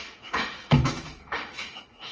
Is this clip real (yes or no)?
no